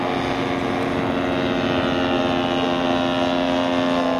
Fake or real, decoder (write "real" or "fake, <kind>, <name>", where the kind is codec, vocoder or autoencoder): real